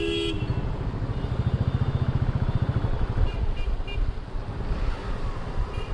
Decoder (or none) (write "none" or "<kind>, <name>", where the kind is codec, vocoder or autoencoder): none